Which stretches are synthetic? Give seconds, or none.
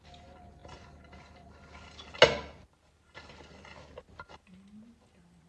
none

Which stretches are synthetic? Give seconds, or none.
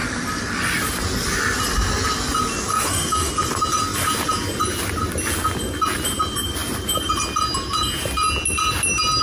2.7-3.3 (autoencoder, DAC-VAE)